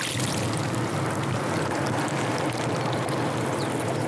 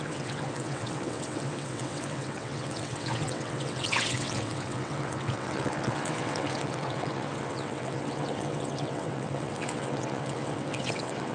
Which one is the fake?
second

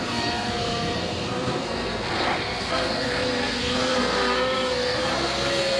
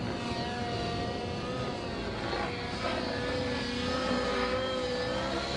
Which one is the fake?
first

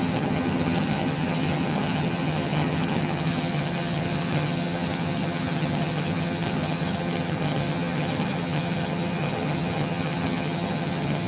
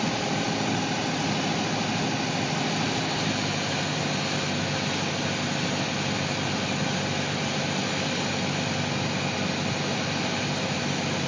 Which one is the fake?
first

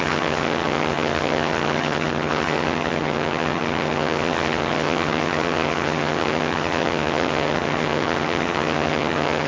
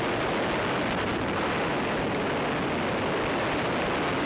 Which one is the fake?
first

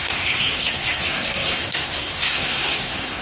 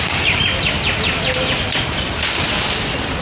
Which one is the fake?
first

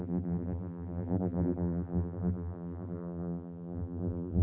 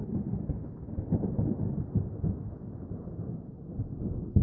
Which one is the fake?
first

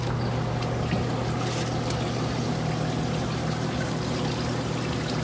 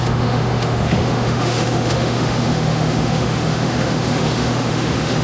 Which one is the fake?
second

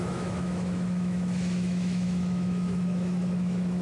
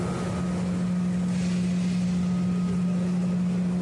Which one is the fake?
first